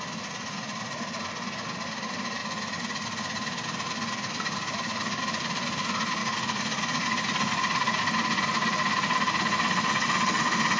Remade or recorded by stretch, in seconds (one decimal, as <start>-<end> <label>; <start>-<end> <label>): 0.0-6.2 recorded; 6.2-8.0 remade; 8.0-10.8 recorded